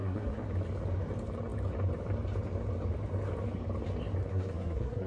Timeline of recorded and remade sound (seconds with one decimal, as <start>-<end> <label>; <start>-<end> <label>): 0.0-0.5 remade; 0.5-4.2 recorded; 4.2-5.1 remade